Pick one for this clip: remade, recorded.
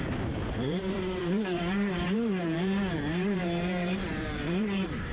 remade